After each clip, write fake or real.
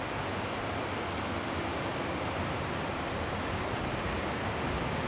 real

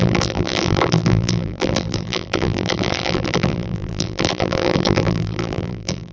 fake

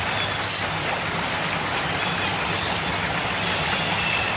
real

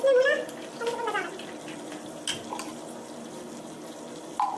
real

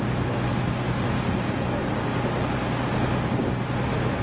real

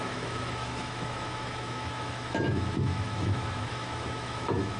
fake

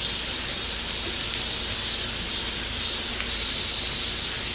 real